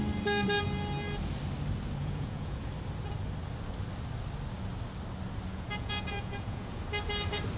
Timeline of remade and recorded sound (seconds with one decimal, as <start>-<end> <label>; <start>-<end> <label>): 0.0-2.0 recorded; 2.0-2.7 remade; 2.7-5.5 recorded; 5.5-6.8 remade; 6.8-7.6 recorded